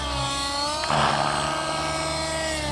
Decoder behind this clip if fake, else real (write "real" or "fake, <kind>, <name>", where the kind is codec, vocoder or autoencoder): real